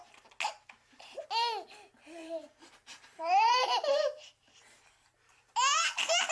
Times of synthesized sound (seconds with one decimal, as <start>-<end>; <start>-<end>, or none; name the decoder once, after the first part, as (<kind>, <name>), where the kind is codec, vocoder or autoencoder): 2.2-4.6 (vocoder, BigVGAN v2)